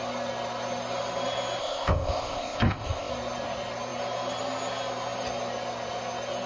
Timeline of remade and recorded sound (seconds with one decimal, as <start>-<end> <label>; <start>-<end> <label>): 0.0-1.6 recorded; 1.6-3.1 remade; 3.1-6.5 recorded